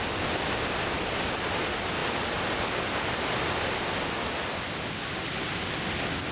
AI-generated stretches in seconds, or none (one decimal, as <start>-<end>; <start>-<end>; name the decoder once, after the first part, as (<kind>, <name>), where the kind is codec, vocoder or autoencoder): none